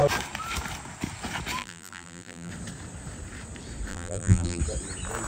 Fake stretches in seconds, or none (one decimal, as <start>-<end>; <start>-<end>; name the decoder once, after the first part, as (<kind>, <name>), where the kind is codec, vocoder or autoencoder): 1.6-2.5 (vocoder, BigVGAN v2); 3.9-4.6